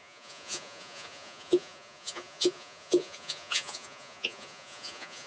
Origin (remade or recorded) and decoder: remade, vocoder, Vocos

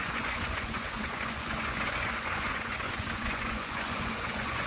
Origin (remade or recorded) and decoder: remade, vocoder, Vocos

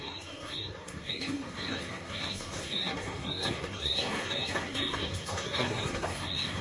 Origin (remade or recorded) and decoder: remade, codec, SNAC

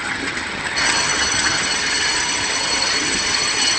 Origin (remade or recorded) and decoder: remade, vocoder, HiFi-GAN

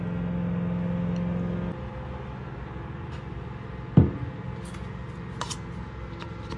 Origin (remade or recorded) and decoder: recorded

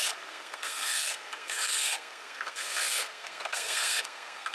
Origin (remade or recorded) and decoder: remade, codec, SNAC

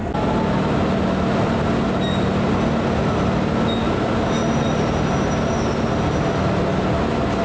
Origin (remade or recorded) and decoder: recorded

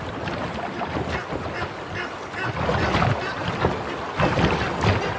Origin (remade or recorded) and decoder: recorded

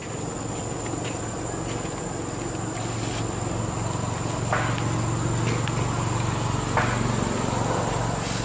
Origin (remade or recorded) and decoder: recorded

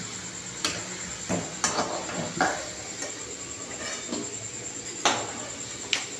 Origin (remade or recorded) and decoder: recorded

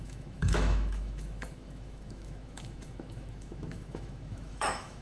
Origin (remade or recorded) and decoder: remade, autoencoder, DAC-VAE